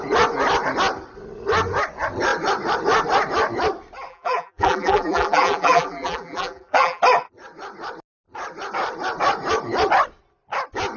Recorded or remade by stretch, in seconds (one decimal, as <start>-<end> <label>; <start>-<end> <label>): 0.0-4.1 recorded; 4.1-7.0 remade; 7.0-11.0 recorded